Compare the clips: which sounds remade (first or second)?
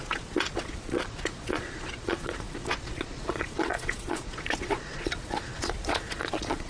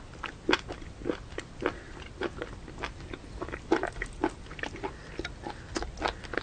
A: first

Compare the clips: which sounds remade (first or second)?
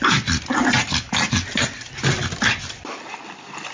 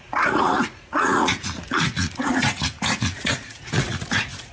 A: second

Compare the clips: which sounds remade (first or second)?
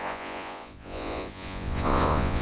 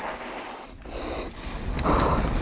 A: first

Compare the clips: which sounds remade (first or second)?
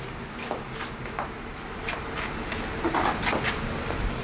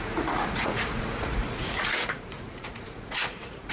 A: second